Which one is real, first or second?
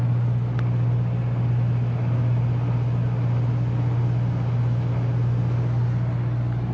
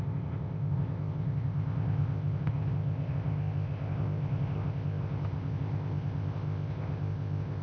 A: first